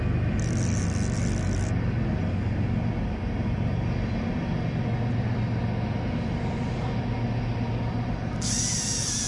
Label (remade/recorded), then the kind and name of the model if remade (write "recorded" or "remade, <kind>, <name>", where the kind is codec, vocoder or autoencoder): recorded